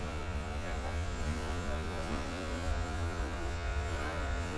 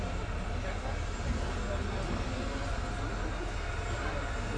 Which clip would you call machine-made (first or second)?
first